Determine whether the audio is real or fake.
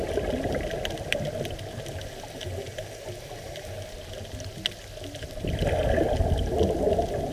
real